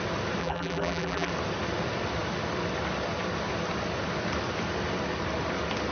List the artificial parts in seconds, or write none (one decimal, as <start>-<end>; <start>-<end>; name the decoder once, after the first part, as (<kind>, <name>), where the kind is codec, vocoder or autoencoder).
0.4-1.3 (vocoder, BigVGAN v2)